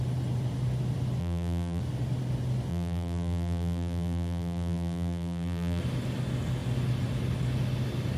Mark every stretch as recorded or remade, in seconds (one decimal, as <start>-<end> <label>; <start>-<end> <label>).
0.0-1.2 recorded; 1.2-1.8 remade; 1.8-2.7 recorded; 2.7-5.8 remade; 5.8-8.2 recorded